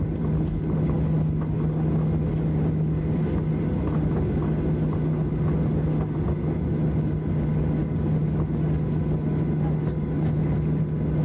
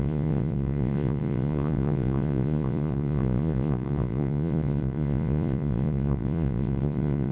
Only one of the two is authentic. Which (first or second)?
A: first